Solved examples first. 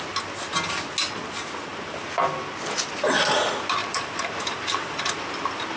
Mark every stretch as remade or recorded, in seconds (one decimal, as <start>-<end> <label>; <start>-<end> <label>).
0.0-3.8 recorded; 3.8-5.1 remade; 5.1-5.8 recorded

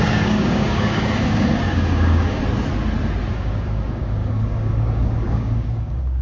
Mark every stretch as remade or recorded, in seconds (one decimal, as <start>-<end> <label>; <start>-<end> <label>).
0.0-2.4 remade; 2.4-3.3 recorded; 3.3-6.2 remade

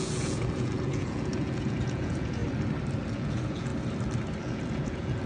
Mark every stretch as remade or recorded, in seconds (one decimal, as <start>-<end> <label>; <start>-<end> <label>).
0.0-2.4 remade; 2.4-3.1 recorded; 3.1-3.7 remade; 3.7-4.4 recorded; 4.4-5.3 remade

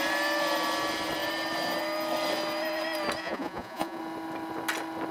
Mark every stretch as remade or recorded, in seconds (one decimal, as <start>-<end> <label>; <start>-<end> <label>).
0.0-3.2 recorded; 3.2-4.0 remade; 4.0-5.1 recorded

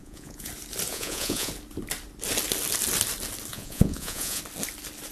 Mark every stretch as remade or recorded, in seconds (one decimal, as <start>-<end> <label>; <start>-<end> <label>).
0.0-0.5 remade; 0.5-0.9 recorded; 0.9-1.5 remade; 1.5-3.5 recorded; 3.5-4.4 remade; 4.4-5.1 recorded

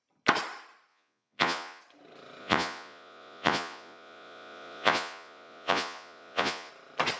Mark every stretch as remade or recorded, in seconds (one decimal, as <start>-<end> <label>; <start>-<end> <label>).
0.0-0.9 recorded; 0.9-1.8 remade; 1.8-2.4 recorded; 2.4-6.7 remade; 6.7-7.2 recorded

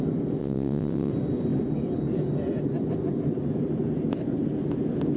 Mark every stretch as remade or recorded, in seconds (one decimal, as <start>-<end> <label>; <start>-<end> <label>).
0.0-0.4 recorded; 0.4-1.1 remade; 1.1-5.2 recorded

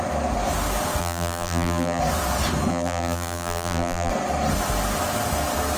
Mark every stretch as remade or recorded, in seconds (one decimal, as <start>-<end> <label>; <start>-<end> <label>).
0.0-1.0 recorded; 1.0-2.0 remade; 2.0-2.7 recorded; 2.7-4.1 remade; 4.1-5.8 recorded